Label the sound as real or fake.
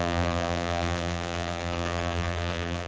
fake